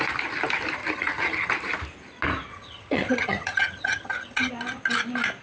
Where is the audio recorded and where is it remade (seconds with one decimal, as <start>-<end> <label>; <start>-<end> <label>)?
0.0-0.8 recorded; 0.8-1.5 remade; 1.5-2.5 recorded; 2.5-4.5 remade; 4.5-5.4 recorded